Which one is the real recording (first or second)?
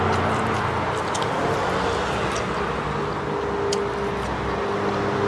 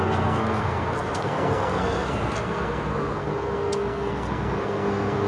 first